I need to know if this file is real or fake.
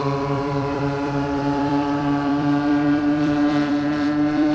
fake